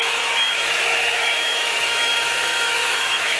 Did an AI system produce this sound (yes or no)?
yes